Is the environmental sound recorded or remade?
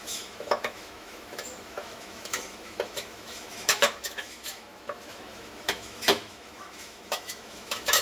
remade